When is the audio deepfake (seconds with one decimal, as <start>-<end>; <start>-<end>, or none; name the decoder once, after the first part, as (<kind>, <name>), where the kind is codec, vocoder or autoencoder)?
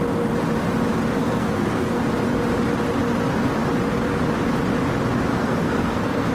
1.2-2.0 (codec, SNAC); 5.3-6.3